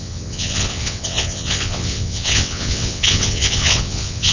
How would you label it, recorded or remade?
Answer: remade